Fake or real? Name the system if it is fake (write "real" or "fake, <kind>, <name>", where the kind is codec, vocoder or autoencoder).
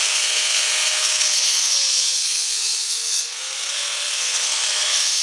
fake, codec, SNAC